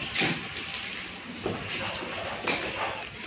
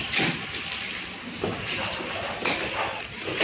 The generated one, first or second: second